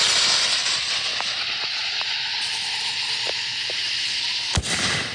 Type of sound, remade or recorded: recorded